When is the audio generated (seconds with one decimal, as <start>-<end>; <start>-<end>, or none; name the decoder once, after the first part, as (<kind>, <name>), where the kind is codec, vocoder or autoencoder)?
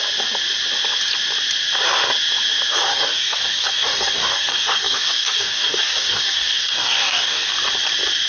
2.9-7.5 (codec, DAC)